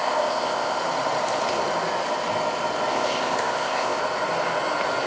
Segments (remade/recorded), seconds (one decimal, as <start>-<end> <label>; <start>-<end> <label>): 0.0-0.8 remade; 0.8-2.9 recorded; 2.9-4.0 remade; 4.0-5.1 recorded